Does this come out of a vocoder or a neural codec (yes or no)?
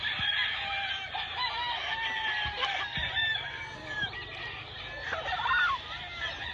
no